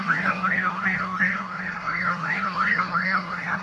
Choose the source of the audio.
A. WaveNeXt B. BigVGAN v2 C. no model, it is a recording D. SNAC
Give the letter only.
D